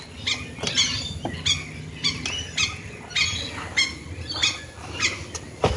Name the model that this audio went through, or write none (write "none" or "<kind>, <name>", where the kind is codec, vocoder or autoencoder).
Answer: none